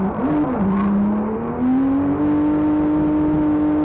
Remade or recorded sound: recorded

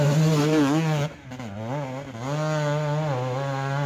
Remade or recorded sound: recorded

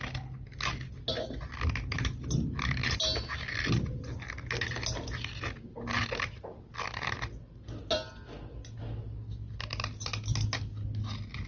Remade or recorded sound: recorded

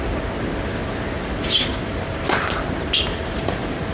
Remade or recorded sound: recorded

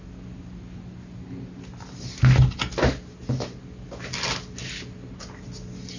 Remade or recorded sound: recorded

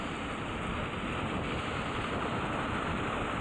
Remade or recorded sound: recorded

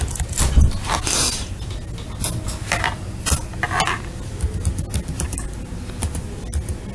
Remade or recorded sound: recorded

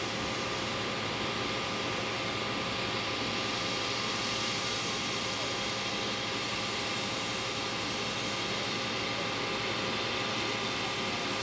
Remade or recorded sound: recorded